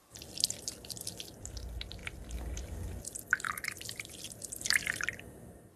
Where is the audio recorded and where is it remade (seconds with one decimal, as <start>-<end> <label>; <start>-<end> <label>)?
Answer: 0.0-5.8 recorded